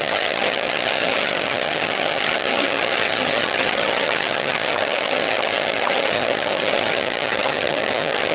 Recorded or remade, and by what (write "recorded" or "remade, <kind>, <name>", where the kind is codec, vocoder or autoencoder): remade, vocoder, HiFi-GAN